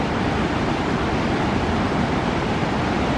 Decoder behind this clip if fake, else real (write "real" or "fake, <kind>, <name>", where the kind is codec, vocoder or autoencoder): real